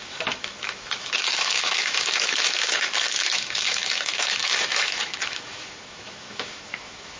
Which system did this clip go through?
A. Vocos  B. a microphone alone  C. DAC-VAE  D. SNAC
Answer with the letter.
C